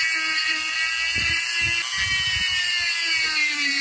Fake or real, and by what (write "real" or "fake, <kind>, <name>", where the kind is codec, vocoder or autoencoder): real